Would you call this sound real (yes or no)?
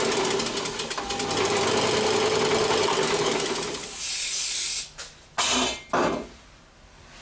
yes